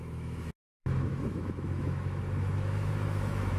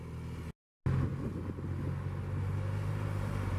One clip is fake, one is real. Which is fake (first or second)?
first